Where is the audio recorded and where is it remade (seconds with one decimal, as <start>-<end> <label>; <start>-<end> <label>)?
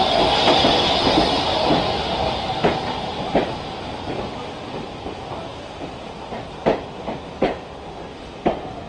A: 0.0-8.9 recorded